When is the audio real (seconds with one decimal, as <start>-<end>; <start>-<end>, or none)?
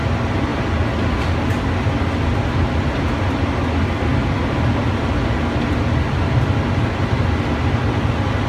0.0-8.5